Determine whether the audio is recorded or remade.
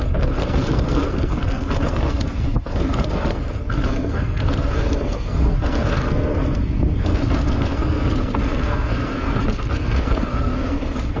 remade